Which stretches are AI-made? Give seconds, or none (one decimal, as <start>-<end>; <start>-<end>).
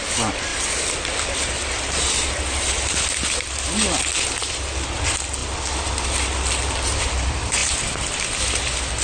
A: none